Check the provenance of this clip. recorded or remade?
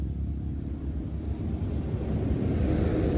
recorded